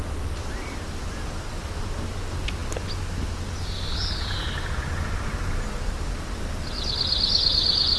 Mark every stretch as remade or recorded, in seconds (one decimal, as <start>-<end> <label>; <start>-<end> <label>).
0.0-8.0 recorded